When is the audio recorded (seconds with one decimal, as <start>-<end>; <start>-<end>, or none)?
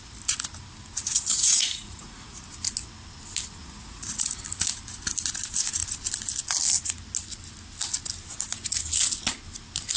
0.0-1.0; 2.4-3.6; 4.4-10.0